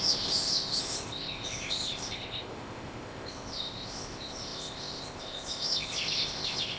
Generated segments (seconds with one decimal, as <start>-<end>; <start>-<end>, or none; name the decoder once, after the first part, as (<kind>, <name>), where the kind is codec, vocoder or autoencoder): 0.0-6.8 (codec, ZipCodec)